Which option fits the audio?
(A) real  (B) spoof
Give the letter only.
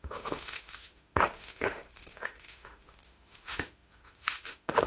B